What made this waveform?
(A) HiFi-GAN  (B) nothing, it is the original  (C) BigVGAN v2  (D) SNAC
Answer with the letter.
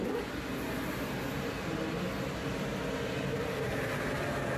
B